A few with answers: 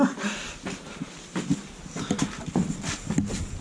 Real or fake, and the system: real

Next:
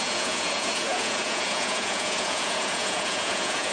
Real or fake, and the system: fake, vocoder, Vocos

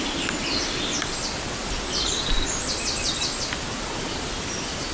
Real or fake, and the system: real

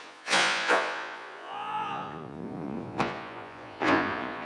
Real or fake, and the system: fake, vocoder, Vocos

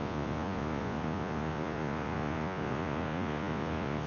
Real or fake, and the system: fake, vocoder, Vocos